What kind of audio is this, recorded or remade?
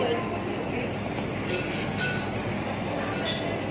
recorded